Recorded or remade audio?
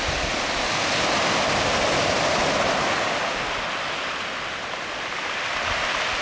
recorded